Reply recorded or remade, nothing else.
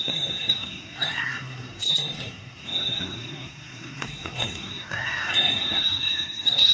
remade